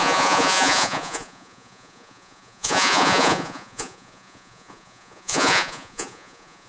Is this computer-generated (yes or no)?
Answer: yes